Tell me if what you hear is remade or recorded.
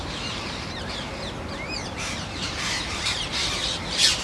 remade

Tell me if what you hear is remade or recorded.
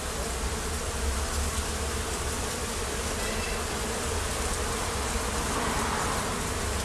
recorded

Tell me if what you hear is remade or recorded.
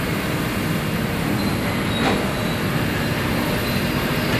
recorded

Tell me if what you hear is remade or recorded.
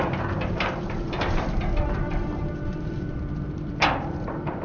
remade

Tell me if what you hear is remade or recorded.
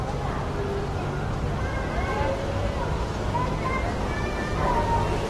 recorded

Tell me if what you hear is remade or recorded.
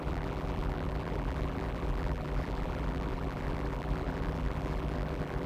remade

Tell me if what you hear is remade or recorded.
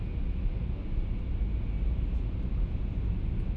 recorded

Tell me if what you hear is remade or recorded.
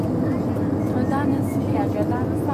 recorded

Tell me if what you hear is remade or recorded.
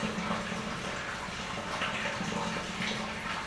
recorded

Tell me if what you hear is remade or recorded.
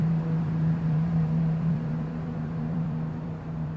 remade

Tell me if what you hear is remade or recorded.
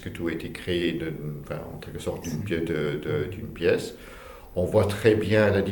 remade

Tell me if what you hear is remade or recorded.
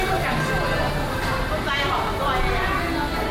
recorded